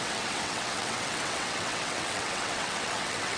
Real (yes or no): no